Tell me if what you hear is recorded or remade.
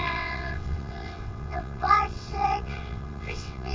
remade